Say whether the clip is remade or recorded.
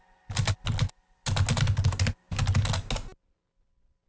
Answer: recorded